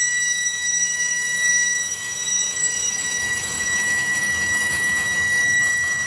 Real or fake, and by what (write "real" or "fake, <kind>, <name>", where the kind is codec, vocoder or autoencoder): fake, autoencoder, DAC-VAE